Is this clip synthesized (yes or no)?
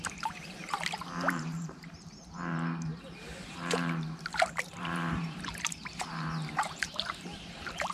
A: yes